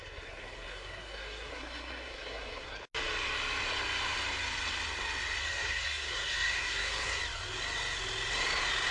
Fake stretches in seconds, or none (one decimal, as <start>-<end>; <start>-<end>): 0.0-2.8; 5.4-7.2